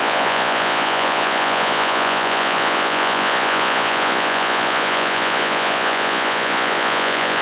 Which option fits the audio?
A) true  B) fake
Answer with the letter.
B